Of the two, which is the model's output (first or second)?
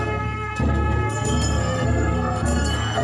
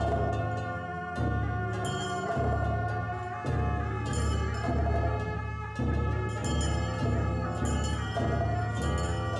first